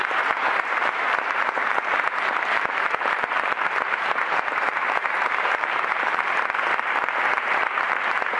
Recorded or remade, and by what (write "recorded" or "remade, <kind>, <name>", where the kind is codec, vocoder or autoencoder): remade, vocoder, BigVGAN v2